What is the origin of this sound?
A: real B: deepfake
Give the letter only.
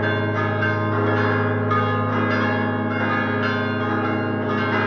A